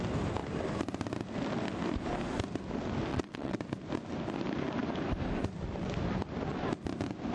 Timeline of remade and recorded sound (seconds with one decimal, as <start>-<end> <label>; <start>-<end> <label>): 0.0-3.1 recorded; 3.1-3.6 remade; 3.6-7.3 recorded